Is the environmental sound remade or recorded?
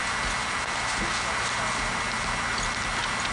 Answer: recorded